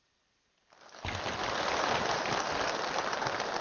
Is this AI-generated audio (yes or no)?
no